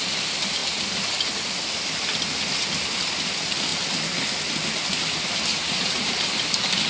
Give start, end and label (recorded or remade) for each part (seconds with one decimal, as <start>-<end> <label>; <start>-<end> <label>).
0.0-5.5 recorded; 5.5-6.1 remade; 6.1-6.9 recorded